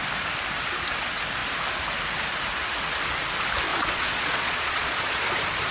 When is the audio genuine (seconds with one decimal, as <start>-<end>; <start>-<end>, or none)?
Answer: 0.0-3.7; 5.2-5.7